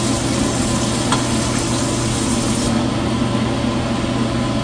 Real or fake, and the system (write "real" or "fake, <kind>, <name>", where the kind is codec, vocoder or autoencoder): real